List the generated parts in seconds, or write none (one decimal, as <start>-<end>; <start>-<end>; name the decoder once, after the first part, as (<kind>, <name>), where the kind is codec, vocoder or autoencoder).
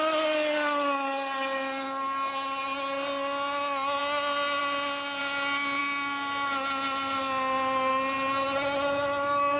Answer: none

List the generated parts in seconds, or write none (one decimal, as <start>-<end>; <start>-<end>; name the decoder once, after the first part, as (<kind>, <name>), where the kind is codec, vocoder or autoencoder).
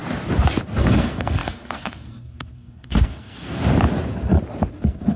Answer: 0.8-3.6 (codec, SNAC); 4.7-5.2